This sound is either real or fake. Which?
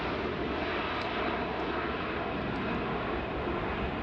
real